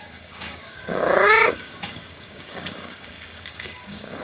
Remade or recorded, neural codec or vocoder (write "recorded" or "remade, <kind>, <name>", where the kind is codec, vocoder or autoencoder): remade, codec, DAC